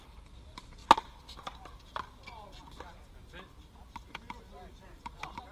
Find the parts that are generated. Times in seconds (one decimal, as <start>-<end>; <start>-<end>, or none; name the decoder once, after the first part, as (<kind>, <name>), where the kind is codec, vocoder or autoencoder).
0.0-0.8 (vocoder, BigVGAN v2); 4.1-5.5